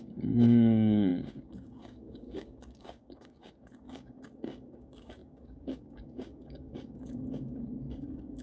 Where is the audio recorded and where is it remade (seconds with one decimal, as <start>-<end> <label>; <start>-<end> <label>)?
0.0-8.4 remade